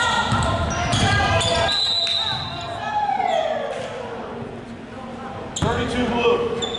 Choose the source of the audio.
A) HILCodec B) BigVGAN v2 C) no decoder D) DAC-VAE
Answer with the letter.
C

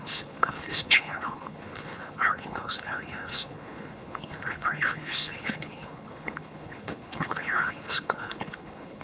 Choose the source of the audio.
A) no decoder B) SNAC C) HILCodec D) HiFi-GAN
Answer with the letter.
C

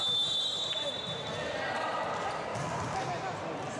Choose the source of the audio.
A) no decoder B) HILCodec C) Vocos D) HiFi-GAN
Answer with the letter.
A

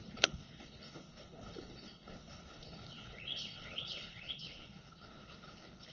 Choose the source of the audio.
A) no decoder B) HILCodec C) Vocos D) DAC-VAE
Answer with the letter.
B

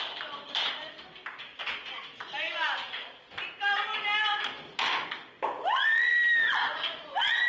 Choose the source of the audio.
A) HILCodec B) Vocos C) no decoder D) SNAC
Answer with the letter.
C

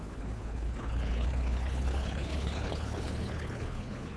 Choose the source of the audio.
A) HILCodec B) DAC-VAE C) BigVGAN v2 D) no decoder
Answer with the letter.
A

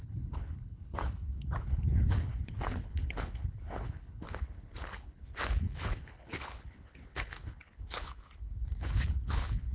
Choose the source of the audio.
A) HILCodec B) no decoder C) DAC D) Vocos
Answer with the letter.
A